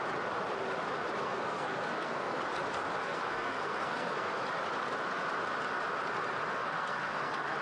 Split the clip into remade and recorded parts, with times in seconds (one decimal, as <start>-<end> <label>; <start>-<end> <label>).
0.0-1.2 recorded; 1.2-2.4 remade; 2.4-3.0 recorded; 3.0-4.4 remade; 4.4-6.5 recorded; 6.5-7.6 remade